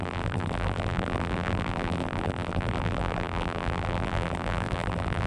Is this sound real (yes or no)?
no